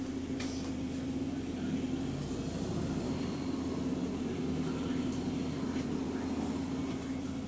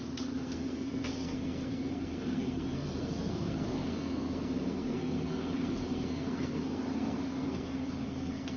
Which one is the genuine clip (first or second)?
first